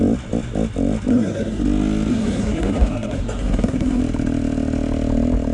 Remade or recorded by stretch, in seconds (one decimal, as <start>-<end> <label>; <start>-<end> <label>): 0.0-1.1 recorded; 1.1-1.6 remade; 1.6-2.1 recorded; 2.1-4.0 remade; 4.0-5.5 recorded